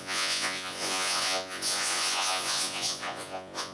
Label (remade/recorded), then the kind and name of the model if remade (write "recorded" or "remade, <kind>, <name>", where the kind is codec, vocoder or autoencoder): remade, vocoder, Vocos